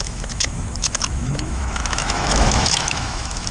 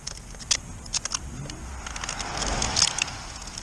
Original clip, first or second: second